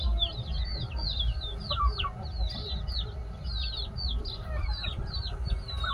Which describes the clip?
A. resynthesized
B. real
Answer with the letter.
B